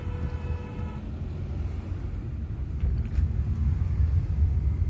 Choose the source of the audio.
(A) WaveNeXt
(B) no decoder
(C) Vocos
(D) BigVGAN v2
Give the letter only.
B